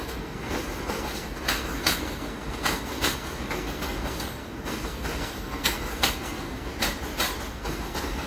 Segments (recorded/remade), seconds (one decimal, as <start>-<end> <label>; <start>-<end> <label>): 0.0-6.7 remade; 6.7-7.5 recorded; 7.5-8.3 remade